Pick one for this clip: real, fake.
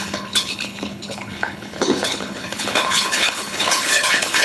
fake